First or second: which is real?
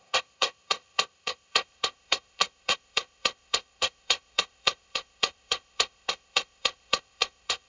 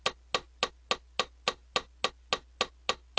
second